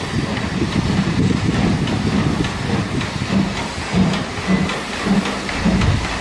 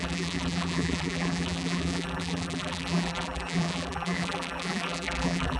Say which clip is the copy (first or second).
second